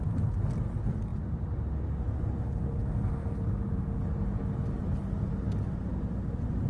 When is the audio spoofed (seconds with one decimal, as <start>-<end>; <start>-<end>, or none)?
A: none